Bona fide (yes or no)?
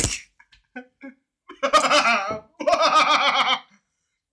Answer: yes